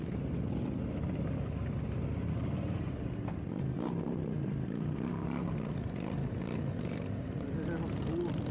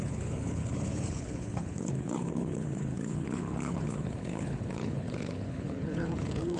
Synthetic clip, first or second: second